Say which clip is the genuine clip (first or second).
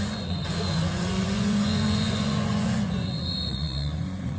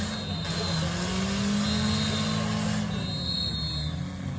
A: second